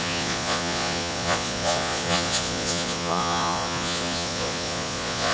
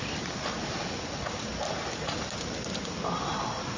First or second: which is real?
second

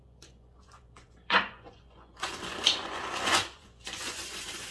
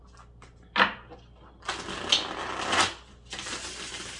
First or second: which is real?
second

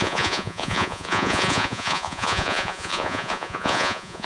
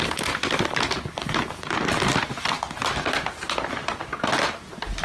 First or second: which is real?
second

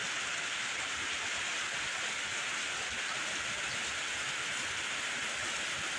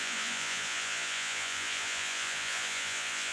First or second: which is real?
first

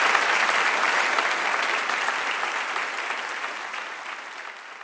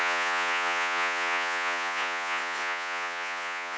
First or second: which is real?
first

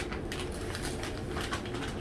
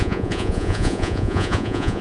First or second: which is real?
first